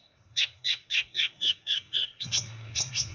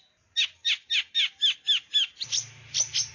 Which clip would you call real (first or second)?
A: second